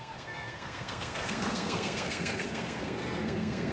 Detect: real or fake fake